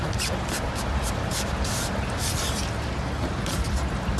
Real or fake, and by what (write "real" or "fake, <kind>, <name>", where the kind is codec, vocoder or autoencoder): real